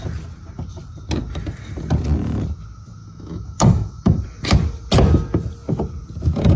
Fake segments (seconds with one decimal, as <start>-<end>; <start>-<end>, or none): 3.0-4.2